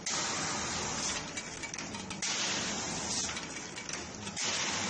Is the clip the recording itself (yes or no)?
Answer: yes